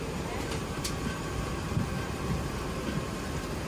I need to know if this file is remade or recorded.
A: remade